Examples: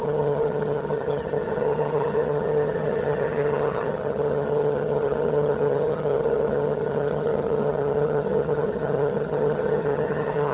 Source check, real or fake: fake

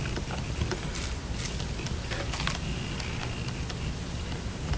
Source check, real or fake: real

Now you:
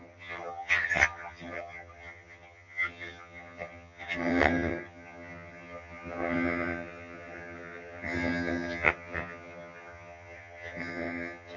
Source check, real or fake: fake